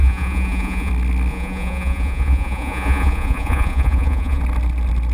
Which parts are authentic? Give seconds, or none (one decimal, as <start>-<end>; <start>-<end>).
0.9-1.3; 4.4-5.1